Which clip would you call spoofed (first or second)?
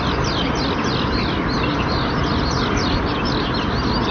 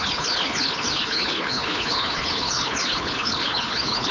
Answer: second